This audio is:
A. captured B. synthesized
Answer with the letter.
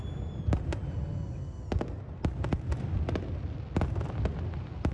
A